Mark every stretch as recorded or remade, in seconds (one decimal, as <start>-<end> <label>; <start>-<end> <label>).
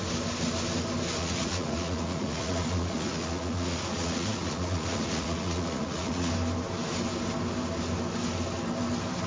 0.0-1.2 recorded; 1.2-6.3 remade; 6.3-9.3 recorded